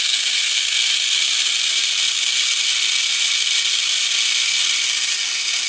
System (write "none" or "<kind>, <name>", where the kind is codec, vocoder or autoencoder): none